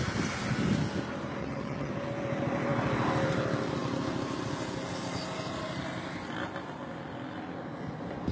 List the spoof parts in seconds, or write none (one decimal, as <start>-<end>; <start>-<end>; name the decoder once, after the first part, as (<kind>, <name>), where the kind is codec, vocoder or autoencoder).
1.4-1.9 (vocoder, HiFi-GAN)